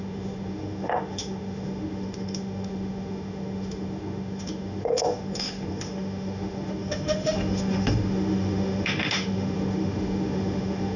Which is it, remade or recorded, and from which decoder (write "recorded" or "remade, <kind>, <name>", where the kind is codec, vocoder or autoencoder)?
remade, autoencoder, DAC-VAE